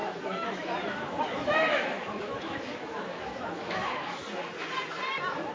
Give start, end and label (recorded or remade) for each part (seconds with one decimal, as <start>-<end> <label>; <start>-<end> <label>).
0.0-4.2 remade; 4.2-5.5 recorded